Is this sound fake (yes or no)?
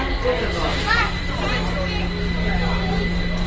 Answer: no